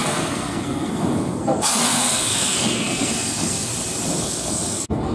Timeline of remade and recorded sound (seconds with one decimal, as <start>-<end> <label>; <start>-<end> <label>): 0.0-3.7 remade; 3.7-4.2 recorded; 4.2-5.1 remade